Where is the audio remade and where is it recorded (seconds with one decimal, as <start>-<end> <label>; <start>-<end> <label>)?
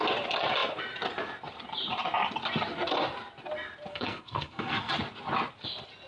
0.0-3.9 recorded; 3.9-4.9 remade; 4.9-6.1 recorded